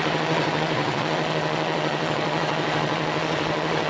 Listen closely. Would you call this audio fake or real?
fake